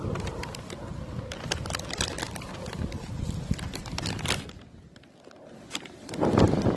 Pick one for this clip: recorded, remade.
recorded